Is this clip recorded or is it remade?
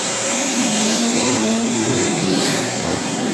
remade